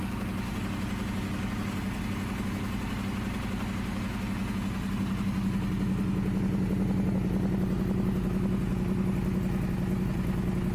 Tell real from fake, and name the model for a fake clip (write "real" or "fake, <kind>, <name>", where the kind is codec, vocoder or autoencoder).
real